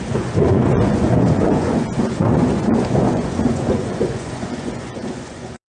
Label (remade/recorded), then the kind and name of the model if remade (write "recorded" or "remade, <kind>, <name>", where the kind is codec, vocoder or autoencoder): remade, vocoder, Vocos